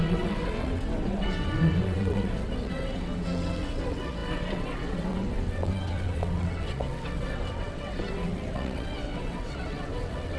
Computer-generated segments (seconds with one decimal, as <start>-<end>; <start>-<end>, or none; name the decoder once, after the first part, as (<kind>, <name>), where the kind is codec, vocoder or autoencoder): 0.0-10.4 (vocoder, WaveNeXt)